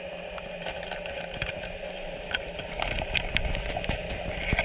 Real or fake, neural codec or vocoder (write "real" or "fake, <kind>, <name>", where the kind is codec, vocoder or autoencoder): real